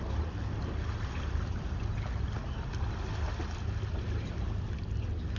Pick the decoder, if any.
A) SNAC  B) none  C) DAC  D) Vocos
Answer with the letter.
B